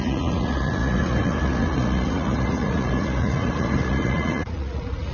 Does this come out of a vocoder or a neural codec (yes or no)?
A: yes